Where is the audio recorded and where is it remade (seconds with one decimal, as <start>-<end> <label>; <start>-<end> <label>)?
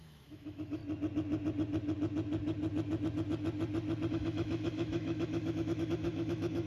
0.0-0.8 remade; 0.8-4.1 recorded; 4.1-6.7 remade